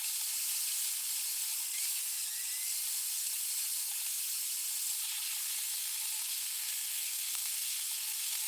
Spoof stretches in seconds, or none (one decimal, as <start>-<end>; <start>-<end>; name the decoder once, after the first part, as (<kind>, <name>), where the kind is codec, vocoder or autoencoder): 5.4-8.5 (codec, SNAC)